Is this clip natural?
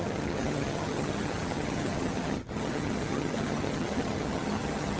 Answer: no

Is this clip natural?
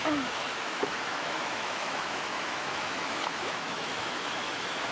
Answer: no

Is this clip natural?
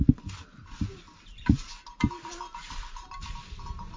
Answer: yes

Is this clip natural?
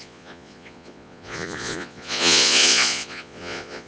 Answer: no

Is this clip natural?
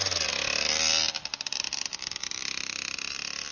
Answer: yes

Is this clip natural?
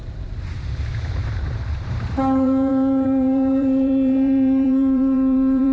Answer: no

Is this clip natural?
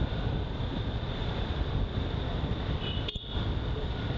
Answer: yes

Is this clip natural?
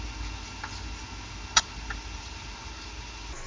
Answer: yes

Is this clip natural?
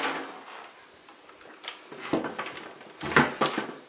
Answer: yes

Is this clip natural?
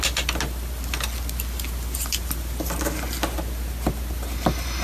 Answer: yes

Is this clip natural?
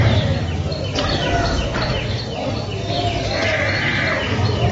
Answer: yes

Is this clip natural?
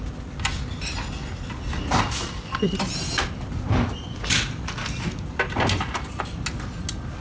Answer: yes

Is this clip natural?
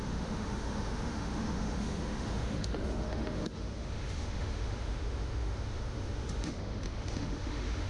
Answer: no